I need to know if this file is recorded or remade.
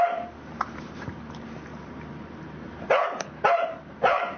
remade